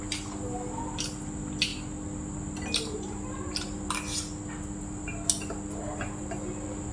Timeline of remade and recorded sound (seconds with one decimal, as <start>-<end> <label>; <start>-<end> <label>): 0.0-6.9 recorded